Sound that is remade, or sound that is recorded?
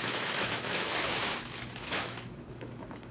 remade